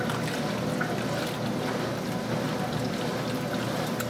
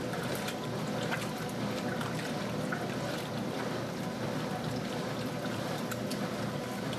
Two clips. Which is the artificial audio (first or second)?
second